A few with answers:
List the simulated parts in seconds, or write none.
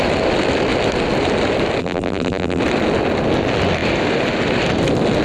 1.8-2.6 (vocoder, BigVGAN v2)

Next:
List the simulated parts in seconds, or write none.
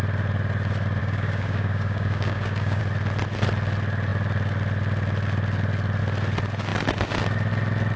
1.0-2.8 (codec, DAC)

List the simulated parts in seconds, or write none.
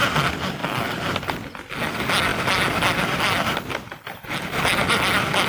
none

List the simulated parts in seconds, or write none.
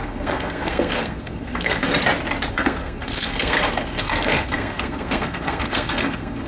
0.0-1.9 (codec, SNAC); 2.5-6.5